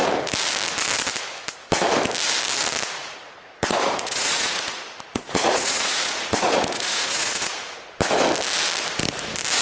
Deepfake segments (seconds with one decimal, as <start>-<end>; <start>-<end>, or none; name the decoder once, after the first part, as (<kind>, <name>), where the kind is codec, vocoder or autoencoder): 3.0-7.5 (vocoder, Vocos)